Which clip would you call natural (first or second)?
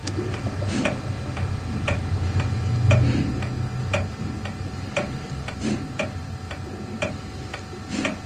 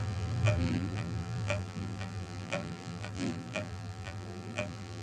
first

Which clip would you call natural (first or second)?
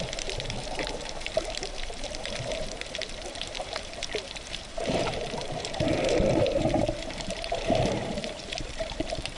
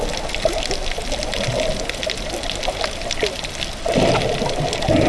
second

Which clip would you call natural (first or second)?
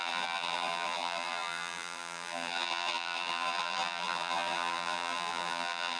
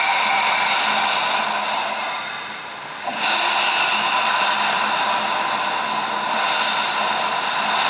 second